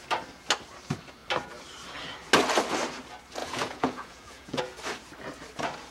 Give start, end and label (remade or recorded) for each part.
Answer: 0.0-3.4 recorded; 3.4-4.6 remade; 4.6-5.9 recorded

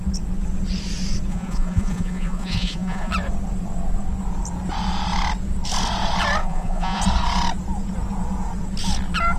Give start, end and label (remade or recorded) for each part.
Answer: 0.0-1.3 recorded; 1.3-3.1 remade; 3.1-6.4 recorded; 6.4-7.0 remade; 7.0-9.4 recorded

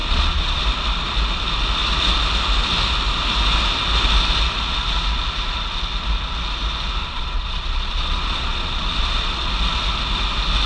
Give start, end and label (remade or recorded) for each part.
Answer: 0.0-0.6 remade; 0.6-7.0 recorded; 7.0-9.5 remade; 9.5-10.7 recorded

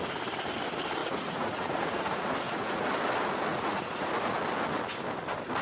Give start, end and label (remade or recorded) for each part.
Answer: 0.0-1.0 recorded; 1.0-2.9 remade; 2.9-3.5 recorded; 3.5-4.4 remade; 4.4-5.6 recorded

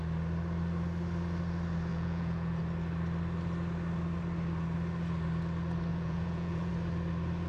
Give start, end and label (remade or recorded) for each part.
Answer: 0.0-1.9 recorded; 1.9-2.6 remade; 2.6-5.9 recorded; 5.9-6.7 remade; 6.7-7.5 recorded

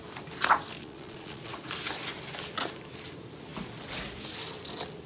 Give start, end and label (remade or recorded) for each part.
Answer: 0.0-0.8 recorded; 0.8-1.5 remade; 1.5-5.1 recorded